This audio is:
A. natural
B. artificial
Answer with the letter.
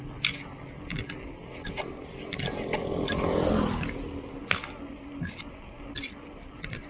A